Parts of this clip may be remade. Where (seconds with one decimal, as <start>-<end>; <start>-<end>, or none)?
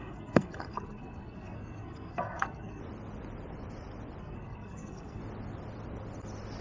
0.0-2.8; 4.2-5.2